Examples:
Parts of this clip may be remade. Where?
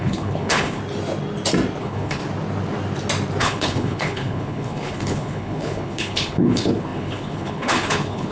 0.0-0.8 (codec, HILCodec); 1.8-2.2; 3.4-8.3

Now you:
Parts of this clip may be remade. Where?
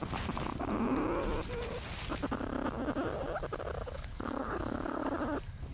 3.8-5.0 (codec, HILCodec)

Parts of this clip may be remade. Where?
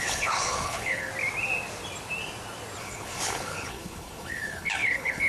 0.0-1.1 (codec, HILCodec); 2.8-5.3